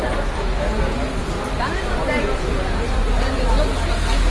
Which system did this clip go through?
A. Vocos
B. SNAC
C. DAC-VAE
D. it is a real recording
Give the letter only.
D